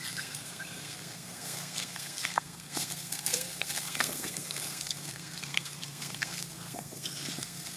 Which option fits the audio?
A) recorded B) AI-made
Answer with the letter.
B